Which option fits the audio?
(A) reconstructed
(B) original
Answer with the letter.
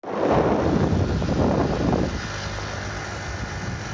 B